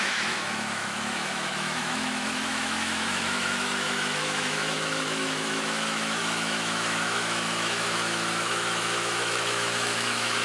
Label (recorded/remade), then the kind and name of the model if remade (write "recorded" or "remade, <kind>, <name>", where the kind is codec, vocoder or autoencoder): remade, autoencoder, DAC-VAE